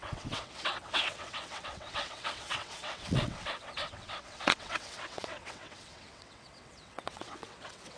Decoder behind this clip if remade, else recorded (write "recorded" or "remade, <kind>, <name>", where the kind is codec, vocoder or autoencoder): remade, vocoder, WaveNeXt